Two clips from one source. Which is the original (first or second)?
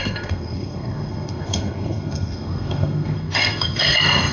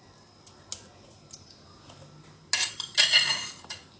second